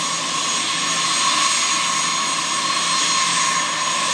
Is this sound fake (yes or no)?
no